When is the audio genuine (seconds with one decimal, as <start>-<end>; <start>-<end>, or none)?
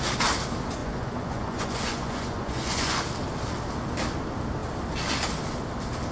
0.0-0.8; 3.0-6.1